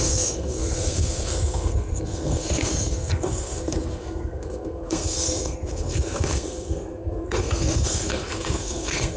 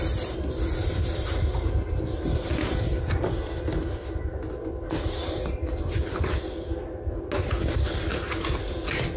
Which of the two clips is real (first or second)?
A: second